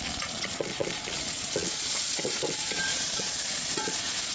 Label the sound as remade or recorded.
remade